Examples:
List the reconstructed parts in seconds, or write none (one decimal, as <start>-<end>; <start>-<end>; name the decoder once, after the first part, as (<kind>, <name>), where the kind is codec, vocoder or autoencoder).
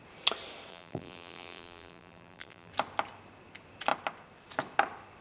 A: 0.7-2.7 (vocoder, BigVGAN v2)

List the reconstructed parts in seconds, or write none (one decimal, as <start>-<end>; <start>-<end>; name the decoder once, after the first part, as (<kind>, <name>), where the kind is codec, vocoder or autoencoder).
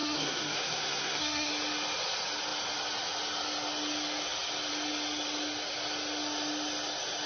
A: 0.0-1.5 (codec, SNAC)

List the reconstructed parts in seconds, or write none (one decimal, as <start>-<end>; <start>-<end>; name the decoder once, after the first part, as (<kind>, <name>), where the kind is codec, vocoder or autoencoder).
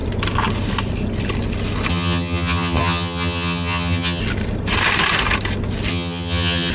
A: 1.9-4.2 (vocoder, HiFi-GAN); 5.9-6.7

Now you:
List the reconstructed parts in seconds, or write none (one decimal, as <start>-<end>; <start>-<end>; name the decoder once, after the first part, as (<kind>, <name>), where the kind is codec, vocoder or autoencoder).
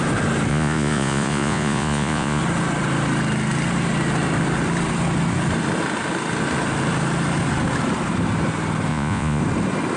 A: 0.5-2.4 (vocoder, Vocos); 8.9-9.4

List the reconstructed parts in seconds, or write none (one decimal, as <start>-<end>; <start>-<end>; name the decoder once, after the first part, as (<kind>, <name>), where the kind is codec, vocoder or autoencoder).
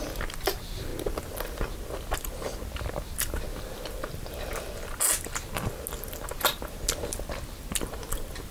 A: none